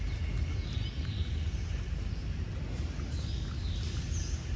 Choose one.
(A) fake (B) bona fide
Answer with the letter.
B